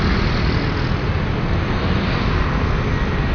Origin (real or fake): real